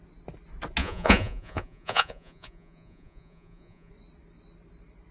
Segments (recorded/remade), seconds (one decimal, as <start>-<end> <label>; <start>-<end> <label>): 0.0-0.8 recorded; 0.8-3.9 remade; 3.9-5.1 recorded